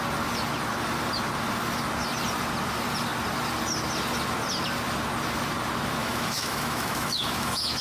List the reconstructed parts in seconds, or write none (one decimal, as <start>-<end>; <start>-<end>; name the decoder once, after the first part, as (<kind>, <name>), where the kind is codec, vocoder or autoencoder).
6.0-7.8 (autoencoder, DAC-VAE)